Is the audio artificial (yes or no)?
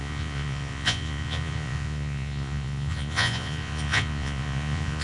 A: yes